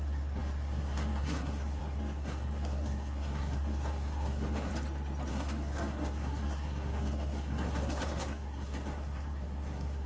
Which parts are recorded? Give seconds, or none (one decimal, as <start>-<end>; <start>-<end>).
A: 4.7-5.3